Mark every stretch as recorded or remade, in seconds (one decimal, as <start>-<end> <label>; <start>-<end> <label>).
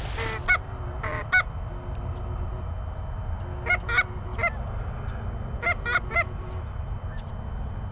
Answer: 0.0-7.9 recorded